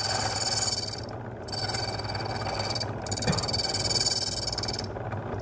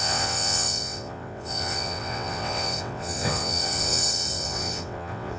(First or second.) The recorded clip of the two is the first